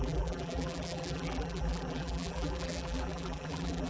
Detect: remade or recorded remade